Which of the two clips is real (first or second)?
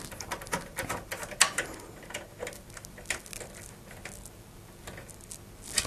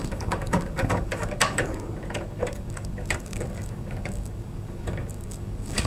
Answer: first